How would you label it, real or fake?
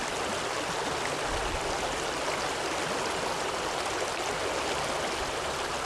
real